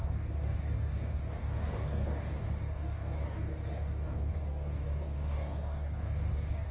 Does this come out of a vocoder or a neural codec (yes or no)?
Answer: yes